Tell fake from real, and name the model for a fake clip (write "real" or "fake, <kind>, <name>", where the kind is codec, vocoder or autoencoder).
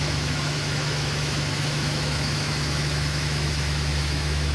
fake, autoencoder, DAC-VAE